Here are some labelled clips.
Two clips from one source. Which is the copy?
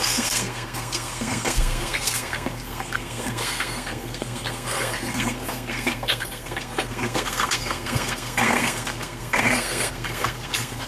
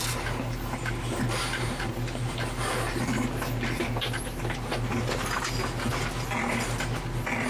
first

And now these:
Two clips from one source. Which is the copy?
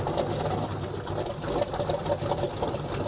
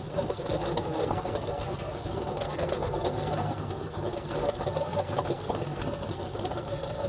second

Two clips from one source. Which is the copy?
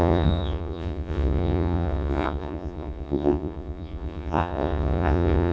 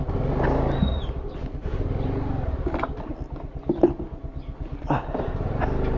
first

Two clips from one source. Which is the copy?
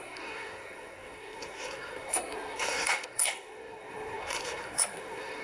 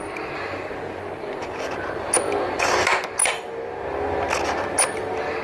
first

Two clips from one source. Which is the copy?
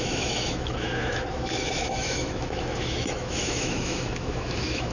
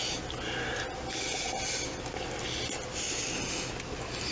first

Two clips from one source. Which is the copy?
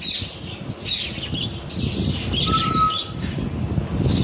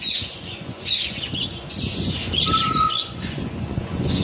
second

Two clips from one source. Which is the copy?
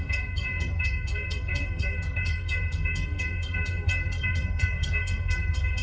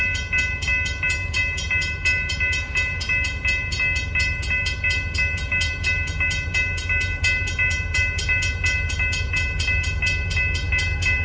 first